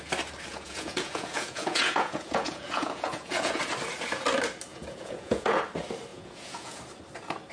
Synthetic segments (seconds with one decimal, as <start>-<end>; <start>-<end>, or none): 0.5-3.6; 4.7-5.6; 6.1-6.8